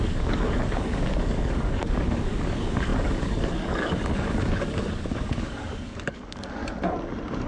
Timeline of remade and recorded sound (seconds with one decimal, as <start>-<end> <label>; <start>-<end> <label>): 0.0-6.6 remade; 6.6-7.5 recorded

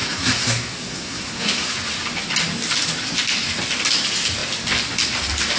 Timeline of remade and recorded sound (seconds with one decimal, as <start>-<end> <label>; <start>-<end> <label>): 0.0-1.7 remade; 1.7-5.6 recorded